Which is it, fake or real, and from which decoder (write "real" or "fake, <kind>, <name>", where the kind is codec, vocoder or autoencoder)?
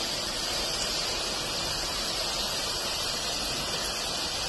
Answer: real